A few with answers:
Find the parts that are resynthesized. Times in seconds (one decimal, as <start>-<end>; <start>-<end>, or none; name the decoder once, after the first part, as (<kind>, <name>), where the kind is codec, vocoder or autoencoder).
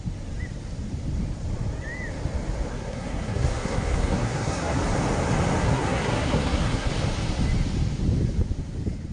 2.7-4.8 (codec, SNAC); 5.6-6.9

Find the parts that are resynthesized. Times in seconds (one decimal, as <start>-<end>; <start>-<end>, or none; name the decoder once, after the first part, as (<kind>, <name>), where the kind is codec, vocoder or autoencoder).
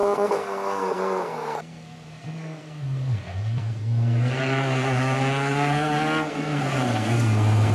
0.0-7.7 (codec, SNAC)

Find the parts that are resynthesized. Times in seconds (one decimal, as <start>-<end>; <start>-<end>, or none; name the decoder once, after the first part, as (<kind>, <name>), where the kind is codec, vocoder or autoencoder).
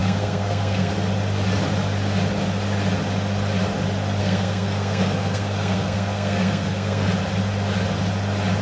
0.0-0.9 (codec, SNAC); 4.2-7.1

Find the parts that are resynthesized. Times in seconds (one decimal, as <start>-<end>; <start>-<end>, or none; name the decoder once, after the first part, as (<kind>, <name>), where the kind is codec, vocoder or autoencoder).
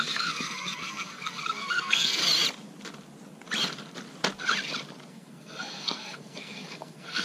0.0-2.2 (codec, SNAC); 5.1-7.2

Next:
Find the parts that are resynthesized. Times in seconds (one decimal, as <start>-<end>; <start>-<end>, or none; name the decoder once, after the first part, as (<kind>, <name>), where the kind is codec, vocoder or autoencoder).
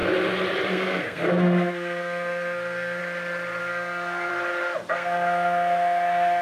0.7-3.0 (codec, SNAC); 3.6-4.3; 4.9-6.4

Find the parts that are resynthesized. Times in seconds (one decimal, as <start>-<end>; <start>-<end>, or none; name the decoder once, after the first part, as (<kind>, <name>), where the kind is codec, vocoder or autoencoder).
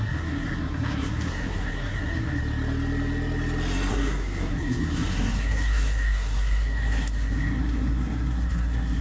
0.0-2.4 (codec, SNAC); 3.9-9.0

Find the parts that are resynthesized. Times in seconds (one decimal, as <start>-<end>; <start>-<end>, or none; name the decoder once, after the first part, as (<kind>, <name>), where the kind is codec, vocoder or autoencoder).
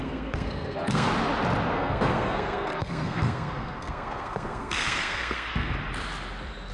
0.0-1.1 (codec, SNAC); 1.7-5.7